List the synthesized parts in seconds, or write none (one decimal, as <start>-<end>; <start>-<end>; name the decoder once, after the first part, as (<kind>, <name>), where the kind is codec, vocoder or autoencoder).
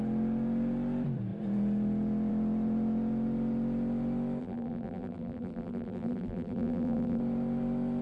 4.4-7.2 (vocoder, BigVGAN v2)